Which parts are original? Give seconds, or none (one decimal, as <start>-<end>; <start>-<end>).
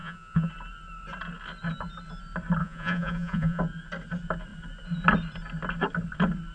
0.5-2.6; 3.6-6.5